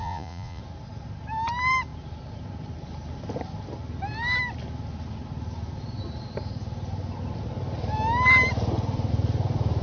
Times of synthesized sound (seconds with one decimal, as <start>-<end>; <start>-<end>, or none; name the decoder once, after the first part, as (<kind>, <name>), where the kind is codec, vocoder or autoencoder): 0.0-0.6 (vocoder, Vocos)